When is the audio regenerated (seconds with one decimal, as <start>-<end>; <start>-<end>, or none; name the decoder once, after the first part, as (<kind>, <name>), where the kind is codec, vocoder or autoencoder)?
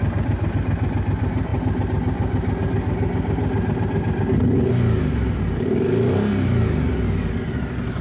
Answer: none